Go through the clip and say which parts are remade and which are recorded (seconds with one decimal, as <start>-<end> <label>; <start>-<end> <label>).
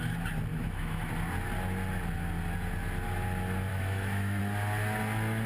0.0-0.5 recorded; 0.5-1.1 remade; 1.1-3.7 recorded; 3.7-4.4 remade; 4.4-5.5 recorded